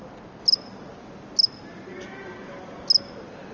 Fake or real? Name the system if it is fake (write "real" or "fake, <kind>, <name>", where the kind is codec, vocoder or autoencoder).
real